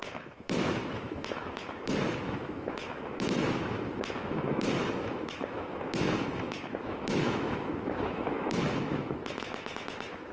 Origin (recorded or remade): remade